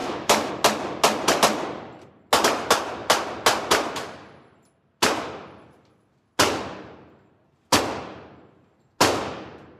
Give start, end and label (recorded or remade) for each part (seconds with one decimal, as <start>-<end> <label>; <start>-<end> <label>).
0.0-0.5 remade; 0.5-9.8 recorded